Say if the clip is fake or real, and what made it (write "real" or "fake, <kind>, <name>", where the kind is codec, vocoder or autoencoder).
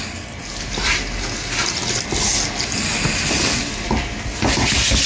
real